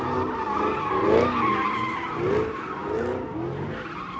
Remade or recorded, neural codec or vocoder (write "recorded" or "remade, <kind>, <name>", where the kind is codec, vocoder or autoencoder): recorded